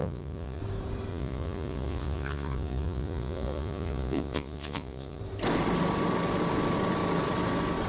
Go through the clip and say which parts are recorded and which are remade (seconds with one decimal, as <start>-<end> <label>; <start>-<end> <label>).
0.0-0.6 remade; 0.6-1.1 recorded; 1.1-5.2 remade; 5.2-7.9 recorded